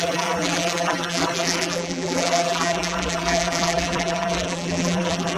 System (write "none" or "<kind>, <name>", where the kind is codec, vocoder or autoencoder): vocoder, BigVGAN v2